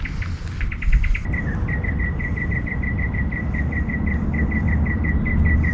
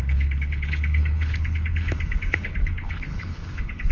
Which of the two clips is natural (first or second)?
first